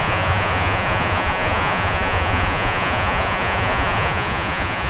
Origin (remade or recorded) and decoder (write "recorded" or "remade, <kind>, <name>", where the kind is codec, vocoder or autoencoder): remade, vocoder, Vocos